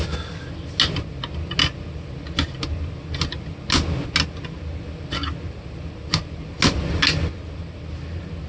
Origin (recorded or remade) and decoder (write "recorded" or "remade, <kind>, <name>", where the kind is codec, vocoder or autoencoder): recorded